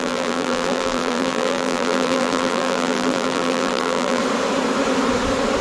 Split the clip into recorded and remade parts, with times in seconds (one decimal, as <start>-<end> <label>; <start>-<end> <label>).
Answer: 0.0-4.2 remade; 4.2-5.6 recorded